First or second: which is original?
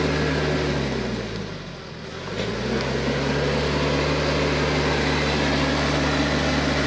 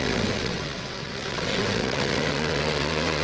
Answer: first